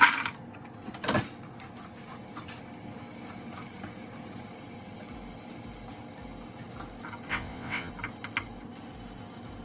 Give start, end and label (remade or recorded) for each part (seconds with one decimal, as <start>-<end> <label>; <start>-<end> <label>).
0.0-7.3 recorded; 7.3-7.9 remade; 7.9-9.6 recorded